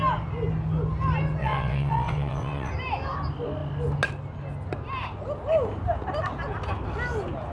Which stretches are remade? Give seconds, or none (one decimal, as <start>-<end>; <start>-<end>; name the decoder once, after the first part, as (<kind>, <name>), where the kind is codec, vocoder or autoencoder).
1.4-2.7 (vocoder, WaveNeXt)